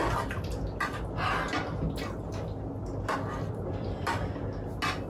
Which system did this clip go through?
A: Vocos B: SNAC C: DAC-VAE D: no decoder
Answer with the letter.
D